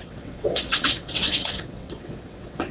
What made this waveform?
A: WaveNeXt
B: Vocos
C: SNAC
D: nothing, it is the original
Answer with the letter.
A